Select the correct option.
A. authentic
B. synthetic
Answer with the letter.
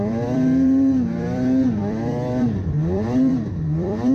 B